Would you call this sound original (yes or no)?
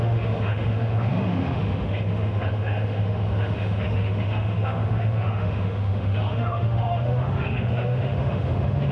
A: no